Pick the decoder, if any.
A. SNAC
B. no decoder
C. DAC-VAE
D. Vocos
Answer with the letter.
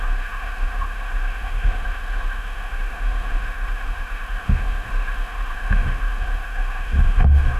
C